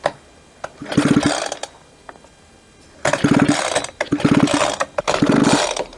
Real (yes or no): yes